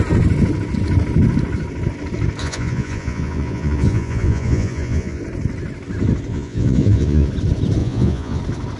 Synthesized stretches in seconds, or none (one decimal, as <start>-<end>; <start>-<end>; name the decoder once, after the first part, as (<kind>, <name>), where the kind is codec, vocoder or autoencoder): 2.4-5.2 (vocoder, Vocos); 6.3-7.3; 7.8-8.4